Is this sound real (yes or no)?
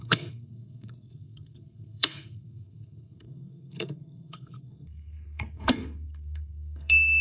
no